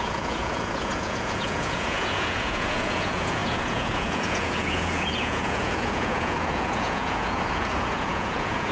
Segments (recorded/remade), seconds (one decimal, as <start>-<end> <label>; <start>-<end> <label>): 0.0-8.7 remade